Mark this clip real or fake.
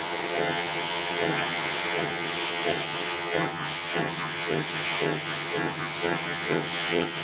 fake